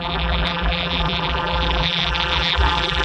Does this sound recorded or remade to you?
remade